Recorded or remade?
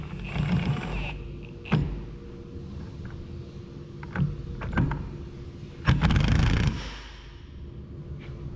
recorded